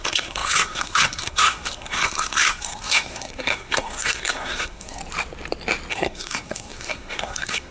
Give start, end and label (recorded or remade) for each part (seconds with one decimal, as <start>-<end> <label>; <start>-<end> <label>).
0.0-5.0 remade; 5.0-5.9 recorded; 5.9-7.7 remade